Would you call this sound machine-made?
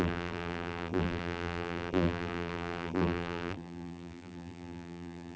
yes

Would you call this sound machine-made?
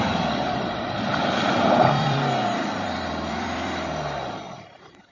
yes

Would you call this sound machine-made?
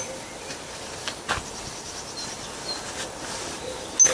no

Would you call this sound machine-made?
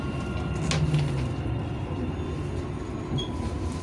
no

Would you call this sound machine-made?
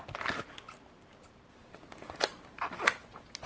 no